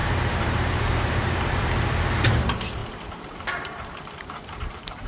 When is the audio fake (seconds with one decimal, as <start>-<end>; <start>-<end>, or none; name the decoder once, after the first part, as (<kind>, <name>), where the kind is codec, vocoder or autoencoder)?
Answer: 0.0-5.1 (vocoder, BigVGAN v2)